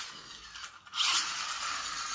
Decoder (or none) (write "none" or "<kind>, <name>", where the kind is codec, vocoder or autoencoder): none